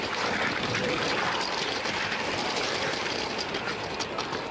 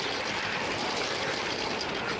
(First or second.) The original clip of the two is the second